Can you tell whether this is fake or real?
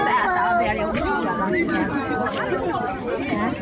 real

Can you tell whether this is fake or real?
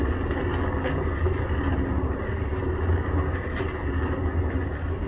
real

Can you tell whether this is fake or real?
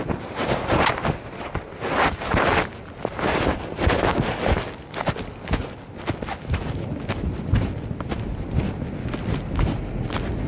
real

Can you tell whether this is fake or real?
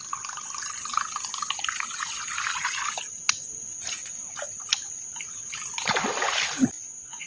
real